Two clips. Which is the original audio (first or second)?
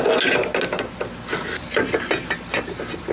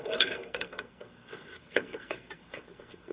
first